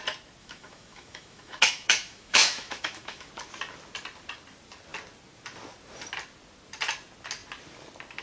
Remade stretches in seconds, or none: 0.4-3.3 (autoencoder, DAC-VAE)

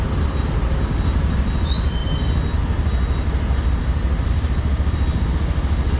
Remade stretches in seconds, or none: none

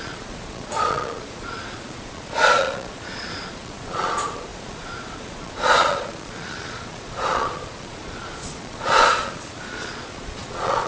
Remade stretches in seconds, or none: 0.0-10.9 (vocoder, Vocos)

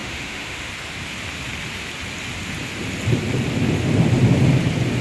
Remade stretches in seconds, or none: 0.0-0.7 (autoencoder, DAC-VAE)

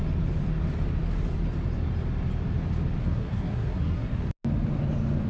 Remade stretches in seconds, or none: 3.0-4.2 (codec, SNAC)

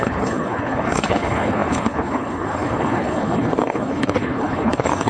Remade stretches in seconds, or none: 0.0-5.1 (codec, HILCodec)

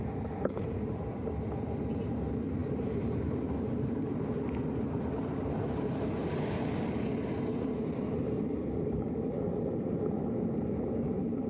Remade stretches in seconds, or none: 0.0-11.5 (vocoder, BigVGAN v2)

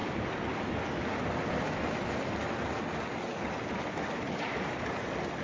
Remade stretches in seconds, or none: none